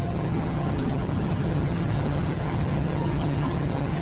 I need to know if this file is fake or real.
fake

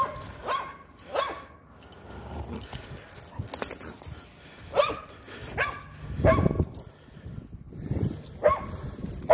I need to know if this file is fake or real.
real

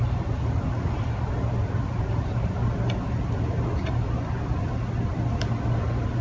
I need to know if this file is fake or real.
real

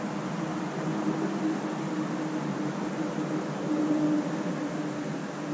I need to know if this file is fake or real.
real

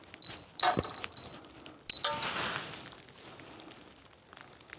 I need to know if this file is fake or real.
real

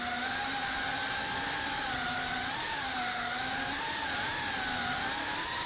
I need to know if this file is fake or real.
real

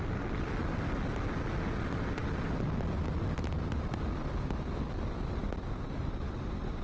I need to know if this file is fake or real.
real